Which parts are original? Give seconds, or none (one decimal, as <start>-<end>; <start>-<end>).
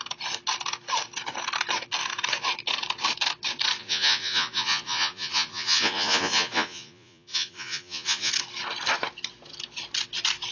0.0-3.8; 8.3-10.5